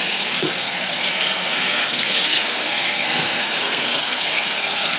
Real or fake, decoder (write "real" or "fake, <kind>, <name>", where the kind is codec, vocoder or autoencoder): fake, codec, SNAC